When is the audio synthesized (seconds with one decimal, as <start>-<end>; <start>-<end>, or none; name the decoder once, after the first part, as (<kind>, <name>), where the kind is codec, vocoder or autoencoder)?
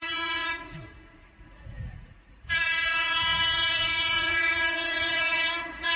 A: 0.0-6.0 (vocoder, Vocos)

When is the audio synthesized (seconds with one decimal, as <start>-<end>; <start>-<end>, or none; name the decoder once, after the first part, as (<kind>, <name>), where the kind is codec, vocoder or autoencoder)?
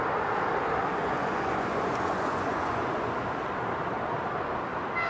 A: 0.9-3.1 (vocoder, Vocos)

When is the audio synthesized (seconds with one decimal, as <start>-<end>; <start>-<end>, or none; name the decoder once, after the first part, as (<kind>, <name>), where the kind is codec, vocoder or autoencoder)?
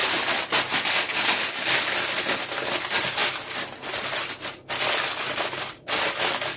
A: none